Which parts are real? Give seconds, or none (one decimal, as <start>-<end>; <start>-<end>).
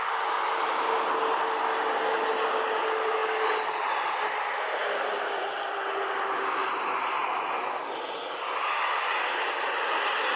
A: 0.0-10.4